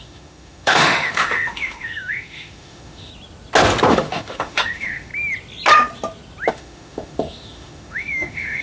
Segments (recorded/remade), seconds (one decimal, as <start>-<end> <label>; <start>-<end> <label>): 0.0-3.1 remade; 3.1-3.9 recorded; 3.9-5.1 remade; 5.1-6.5 recorded; 6.5-8.6 remade